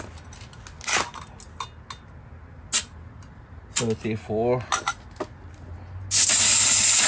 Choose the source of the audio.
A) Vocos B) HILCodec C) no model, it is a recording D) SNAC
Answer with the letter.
C